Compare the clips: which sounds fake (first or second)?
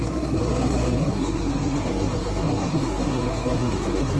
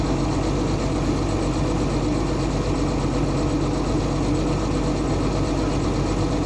first